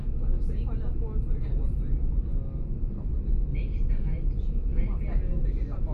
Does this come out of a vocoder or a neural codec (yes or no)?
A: no